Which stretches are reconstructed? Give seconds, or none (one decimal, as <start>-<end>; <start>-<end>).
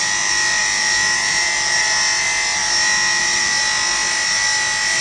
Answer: none